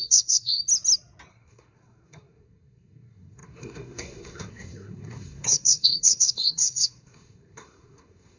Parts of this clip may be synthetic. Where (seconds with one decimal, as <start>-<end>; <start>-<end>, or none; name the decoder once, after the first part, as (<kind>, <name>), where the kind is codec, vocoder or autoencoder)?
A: 0.0-0.6 (codec, SNAC); 1.3-8.4